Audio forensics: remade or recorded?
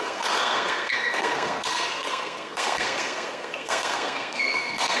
remade